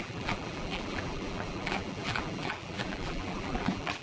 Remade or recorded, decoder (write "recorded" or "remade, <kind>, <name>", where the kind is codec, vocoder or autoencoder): remade, vocoder, BigVGAN v2